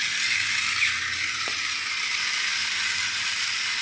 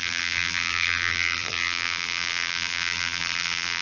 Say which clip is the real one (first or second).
first